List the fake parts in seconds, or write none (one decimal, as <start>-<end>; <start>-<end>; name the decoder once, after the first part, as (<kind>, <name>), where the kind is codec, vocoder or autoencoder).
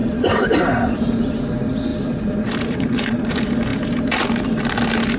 0.0-1.4 (vocoder, BigVGAN v2); 1.9-3.3; 3.7-4.3